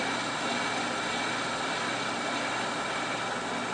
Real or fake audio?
real